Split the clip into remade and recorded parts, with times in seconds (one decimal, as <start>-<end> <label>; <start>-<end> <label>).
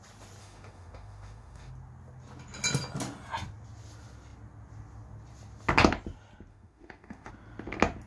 0.0-0.4 recorded; 0.4-1.7 remade; 1.7-6.5 recorded; 6.5-7.3 remade; 7.3-8.1 recorded